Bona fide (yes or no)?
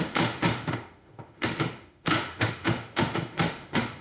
no